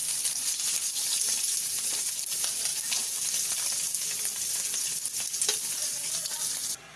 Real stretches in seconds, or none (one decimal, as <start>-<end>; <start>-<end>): 0.0-7.0